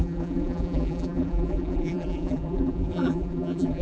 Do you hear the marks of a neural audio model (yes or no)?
yes